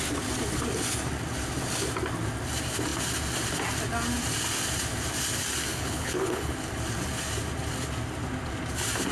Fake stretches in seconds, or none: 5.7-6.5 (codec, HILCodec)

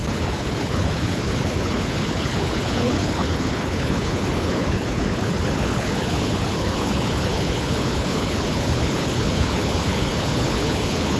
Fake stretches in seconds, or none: 0.0-11.2 (codec, HILCodec)

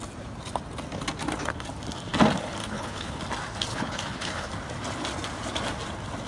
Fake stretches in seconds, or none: 2.6-3.2 (codec, HILCodec); 3.7-4.5